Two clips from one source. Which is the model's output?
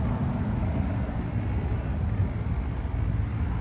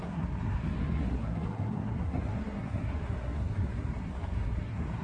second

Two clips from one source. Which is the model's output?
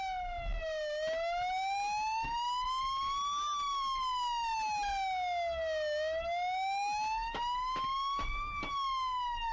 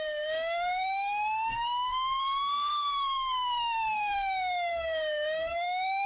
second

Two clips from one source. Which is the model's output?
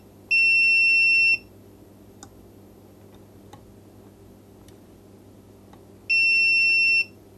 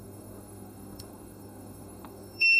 second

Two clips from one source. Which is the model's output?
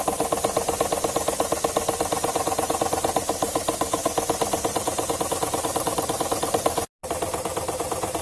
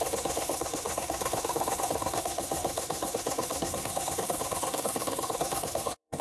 second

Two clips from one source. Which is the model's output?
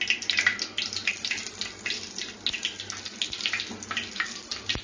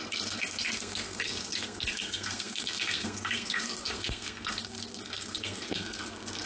second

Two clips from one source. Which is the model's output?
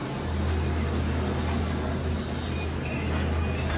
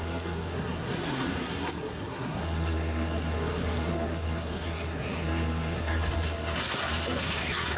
second